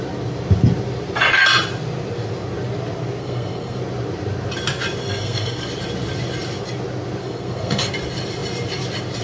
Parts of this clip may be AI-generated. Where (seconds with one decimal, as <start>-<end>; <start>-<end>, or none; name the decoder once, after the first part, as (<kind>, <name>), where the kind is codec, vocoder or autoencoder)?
3.2-3.8 (codec, SNAC); 5.0-5.7; 7.2-7.9